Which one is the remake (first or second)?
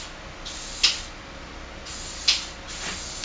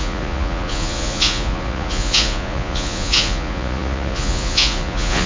second